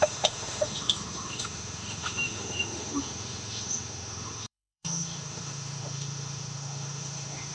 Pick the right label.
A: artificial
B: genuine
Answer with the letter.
A